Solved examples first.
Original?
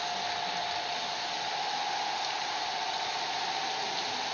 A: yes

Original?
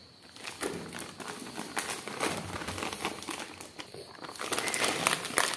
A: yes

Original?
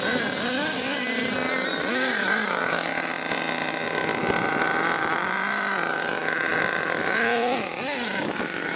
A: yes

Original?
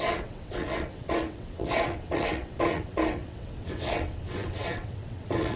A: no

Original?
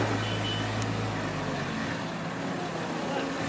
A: yes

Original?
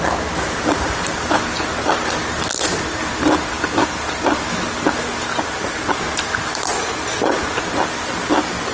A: no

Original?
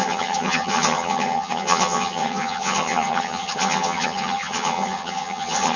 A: no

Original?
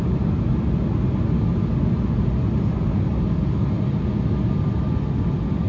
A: yes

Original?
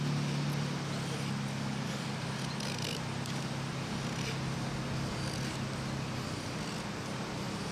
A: yes